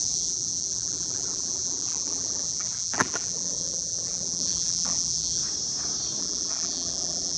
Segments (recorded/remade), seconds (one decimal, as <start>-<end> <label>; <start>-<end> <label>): 0.0-5.4 remade; 5.4-6.2 recorded; 6.2-7.4 remade